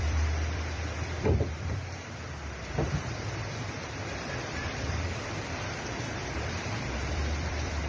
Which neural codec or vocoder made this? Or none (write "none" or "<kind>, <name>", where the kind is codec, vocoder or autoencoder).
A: vocoder, BigVGAN v2